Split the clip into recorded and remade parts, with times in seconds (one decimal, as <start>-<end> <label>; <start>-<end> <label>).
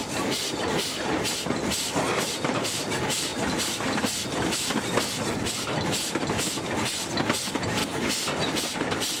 0.0-2.3 recorded; 2.3-3.3 remade; 3.3-7.5 recorded; 7.5-7.9 remade; 7.9-8.6 recorded; 8.6-9.2 remade